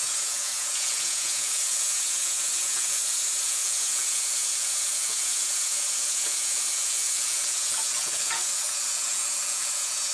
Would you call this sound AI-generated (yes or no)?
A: yes